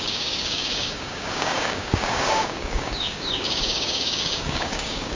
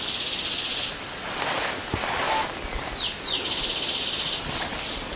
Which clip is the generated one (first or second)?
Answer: first